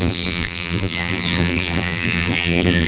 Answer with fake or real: fake